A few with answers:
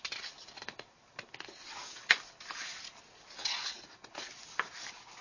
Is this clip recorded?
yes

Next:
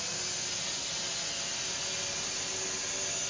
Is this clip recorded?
yes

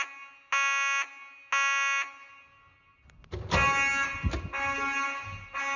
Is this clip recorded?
yes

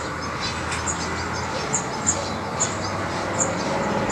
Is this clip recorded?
yes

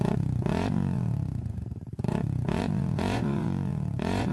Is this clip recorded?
no